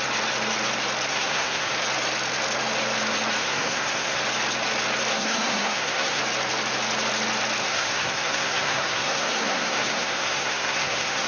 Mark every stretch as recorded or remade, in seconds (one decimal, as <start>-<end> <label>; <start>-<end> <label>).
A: 0.0-1.1 recorded; 1.1-1.7 remade; 1.7-3.4 recorded; 3.4-4.2 remade; 4.2-5.1 recorded; 5.1-6.2 remade; 6.2-7.6 recorded; 7.6-11.3 remade